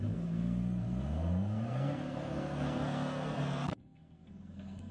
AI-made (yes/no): yes